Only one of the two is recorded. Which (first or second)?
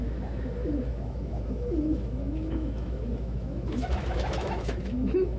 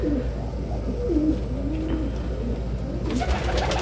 second